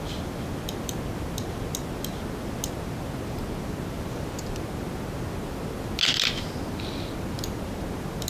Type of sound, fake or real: real